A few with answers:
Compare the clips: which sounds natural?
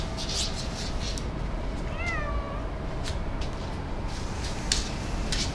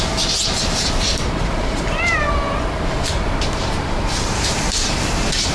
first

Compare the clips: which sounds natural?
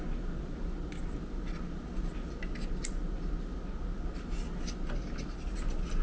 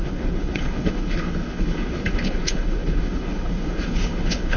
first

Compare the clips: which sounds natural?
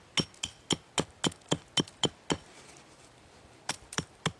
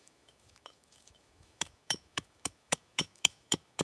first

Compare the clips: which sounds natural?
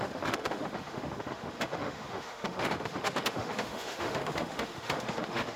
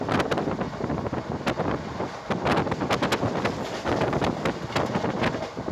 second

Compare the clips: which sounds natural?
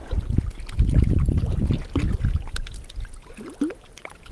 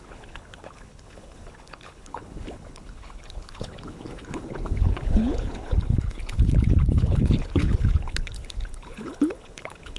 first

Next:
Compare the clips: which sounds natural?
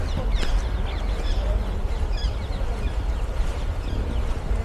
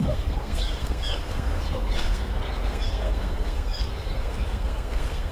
first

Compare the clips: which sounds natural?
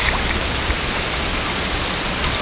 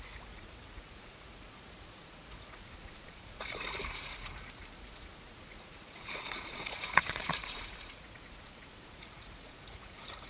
first